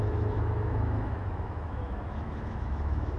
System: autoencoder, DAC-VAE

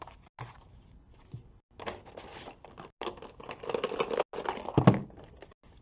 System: none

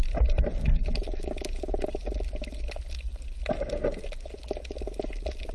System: none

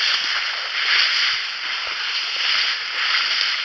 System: none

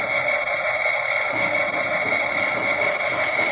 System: none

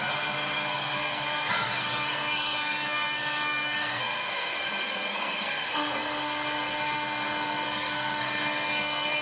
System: codec, SNAC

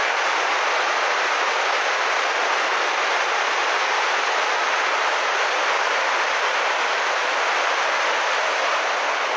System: none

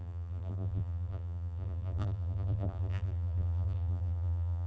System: vocoder, BigVGAN v2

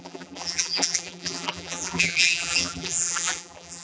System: vocoder, BigVGAN v2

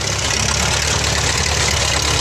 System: none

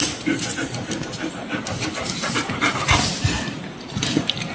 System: none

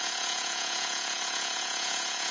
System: vocoder, Vocos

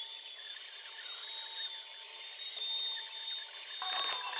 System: none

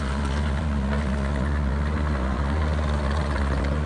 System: vocoder, Vocos